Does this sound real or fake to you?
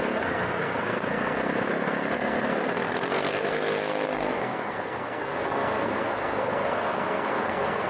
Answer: fake